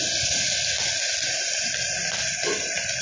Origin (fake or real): real